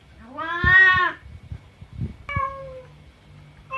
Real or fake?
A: real